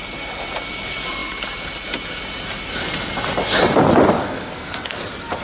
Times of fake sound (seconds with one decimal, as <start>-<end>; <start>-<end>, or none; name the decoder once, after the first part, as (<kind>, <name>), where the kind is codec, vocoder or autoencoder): 4.2-5.0 (codec, SNAC)